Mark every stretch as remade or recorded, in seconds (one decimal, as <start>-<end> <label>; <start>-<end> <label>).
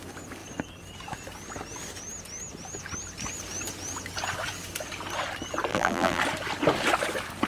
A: 0.0-5.7 recorded; 5.7-6.2 remade; 6.2-7.5 recorded